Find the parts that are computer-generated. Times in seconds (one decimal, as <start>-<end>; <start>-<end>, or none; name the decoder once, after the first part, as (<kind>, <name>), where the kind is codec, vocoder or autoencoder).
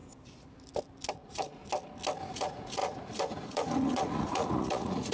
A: 1.1-1.6 (vocoder, Vocos); 2.3-5.1